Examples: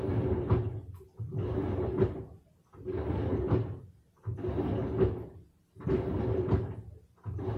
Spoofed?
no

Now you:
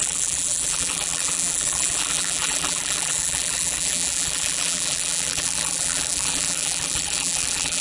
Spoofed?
yes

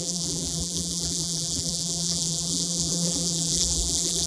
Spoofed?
yes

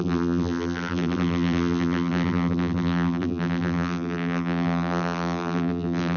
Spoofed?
yes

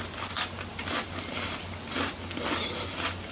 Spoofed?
no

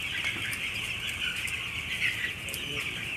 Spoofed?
no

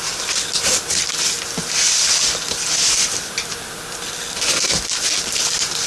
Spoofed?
no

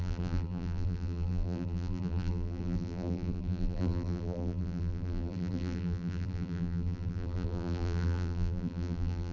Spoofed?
yes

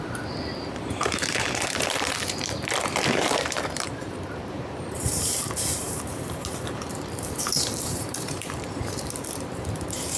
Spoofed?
yes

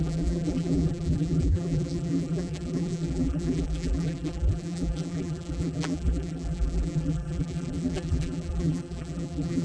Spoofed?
yes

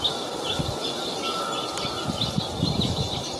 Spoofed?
no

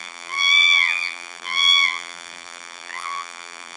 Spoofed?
yes